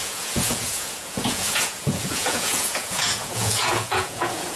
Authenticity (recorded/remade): remade